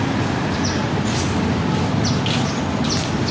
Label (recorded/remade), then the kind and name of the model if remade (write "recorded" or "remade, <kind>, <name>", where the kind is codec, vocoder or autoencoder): recorded